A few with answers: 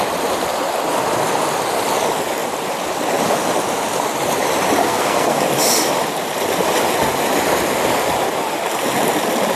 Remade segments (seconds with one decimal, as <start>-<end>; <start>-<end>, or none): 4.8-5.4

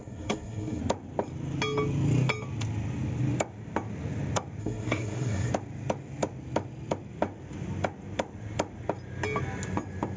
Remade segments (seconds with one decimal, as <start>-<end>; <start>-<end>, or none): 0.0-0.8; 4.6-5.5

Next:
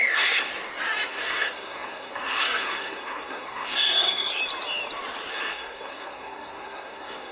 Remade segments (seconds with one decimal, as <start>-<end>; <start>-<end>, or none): 0.0-0.5; 1.1-4.4; 5.3-7.3